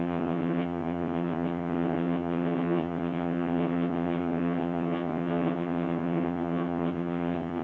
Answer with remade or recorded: remade